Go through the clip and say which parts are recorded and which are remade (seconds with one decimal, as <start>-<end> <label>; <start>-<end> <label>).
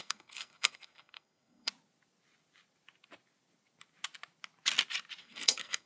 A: 0.0-1.7 remade; 1.7-5.2 recorded; 5.2-5.9 remade